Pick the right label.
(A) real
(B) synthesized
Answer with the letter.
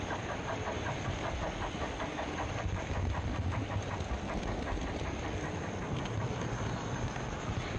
A